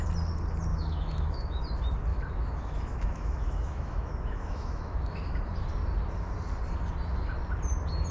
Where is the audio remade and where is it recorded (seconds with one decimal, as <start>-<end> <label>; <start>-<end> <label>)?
0.0-0.7 recorded; 0.7-1.6 remade; 1.6-2.1 recorded; 2.1-5.4 remade; 5.4-8.1 recorded